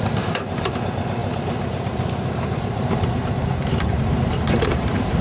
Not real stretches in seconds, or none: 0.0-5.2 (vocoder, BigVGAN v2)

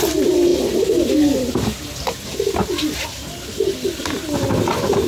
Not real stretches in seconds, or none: none

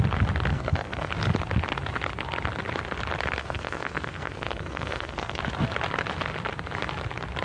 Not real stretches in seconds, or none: 0.5-1.1 (codec, SNAC); 3.4-5.4

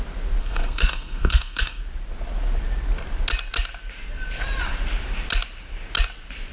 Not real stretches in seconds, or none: 0.4-1.8 (codec, SNAC)